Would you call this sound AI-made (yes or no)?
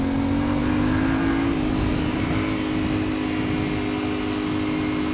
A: no